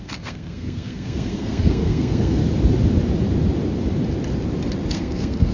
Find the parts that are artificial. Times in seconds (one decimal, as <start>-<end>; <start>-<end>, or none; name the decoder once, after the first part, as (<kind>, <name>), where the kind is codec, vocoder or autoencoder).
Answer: 0.0-2.4 (codec, SNAC); 4.9-5.5